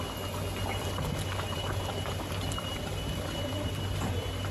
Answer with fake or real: real